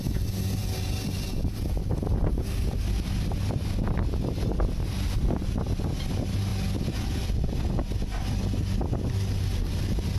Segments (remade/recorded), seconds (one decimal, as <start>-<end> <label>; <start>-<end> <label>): 0.0-6.5 recorded; 6.5-7.7 remade; 7.7-10.2 recorded